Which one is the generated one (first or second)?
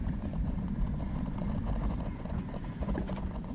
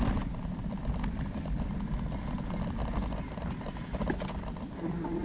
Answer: first